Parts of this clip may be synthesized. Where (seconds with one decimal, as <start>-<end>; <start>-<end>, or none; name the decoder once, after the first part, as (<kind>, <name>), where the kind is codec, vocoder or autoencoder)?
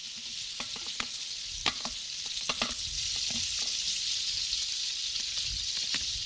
none